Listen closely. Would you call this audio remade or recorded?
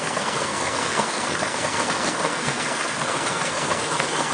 remade